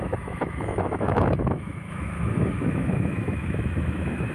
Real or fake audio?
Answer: fake